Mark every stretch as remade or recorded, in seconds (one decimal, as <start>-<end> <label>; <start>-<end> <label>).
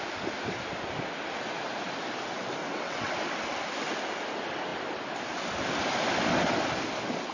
0.0-2.6 recorded; 2.6-3.1 remade; 3.1-7.3 recorded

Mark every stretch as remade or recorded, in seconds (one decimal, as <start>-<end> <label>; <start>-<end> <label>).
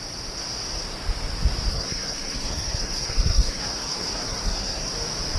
0.0-1.7 recorded; 1.7-4.9 remade; 4.9-5.4 recorded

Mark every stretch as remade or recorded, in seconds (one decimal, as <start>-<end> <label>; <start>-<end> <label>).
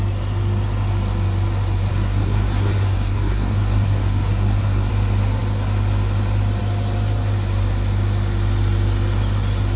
0.0-1.9 recorded; 1.9-4.9 remade; 4.9-9.8 recorded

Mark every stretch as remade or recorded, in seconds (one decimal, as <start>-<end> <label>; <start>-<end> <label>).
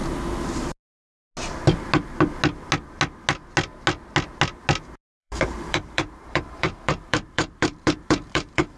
0.0-5.2 recorded; 5.2-8.8 remade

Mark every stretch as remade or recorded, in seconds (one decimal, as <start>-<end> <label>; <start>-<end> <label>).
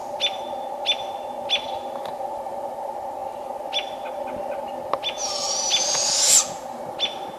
0.0-5.2 recorded; 5.2-5.7 remade; 5.7-7.4 recorded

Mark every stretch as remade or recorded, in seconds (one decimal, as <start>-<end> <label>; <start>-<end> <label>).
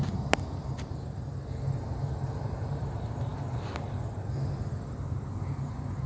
0.0-6.1 recorded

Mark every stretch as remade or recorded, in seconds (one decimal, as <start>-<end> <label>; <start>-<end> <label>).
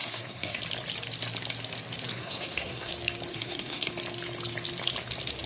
0.0-0.6 remade; 0.6-2.1 recorded; 2.1-2.9 remade; 2.9-3.3 recorded; 3.3-3.9 remade; 3.9-5.5 recorded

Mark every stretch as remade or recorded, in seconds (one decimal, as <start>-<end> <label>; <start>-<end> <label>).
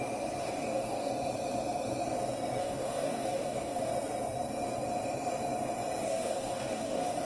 0.0-0.4 recorded; 0.4-1.1 remade; 1.1-2.6 recorded; 2.6-3.9 remade; 3.9-6.0 recorded; 6.0-7.2 remade